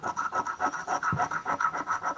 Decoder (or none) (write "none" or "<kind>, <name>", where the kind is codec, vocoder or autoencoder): none